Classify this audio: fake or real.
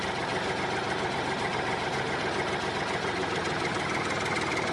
fake